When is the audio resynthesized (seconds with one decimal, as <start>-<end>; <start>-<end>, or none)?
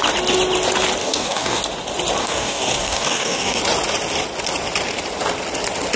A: 1.0-1.6; 2.2-3.6